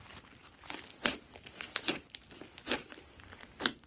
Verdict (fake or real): real